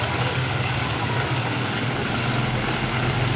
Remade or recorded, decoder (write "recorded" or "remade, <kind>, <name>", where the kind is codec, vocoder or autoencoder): remade, codec, DAC